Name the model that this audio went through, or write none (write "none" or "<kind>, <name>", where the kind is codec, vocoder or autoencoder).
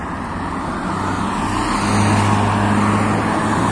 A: none